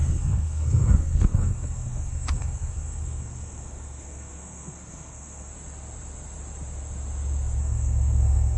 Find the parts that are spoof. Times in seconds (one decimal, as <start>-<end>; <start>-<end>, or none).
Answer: 0.0-5.5; 7.6-8.6